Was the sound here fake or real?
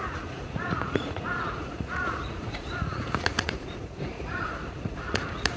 fake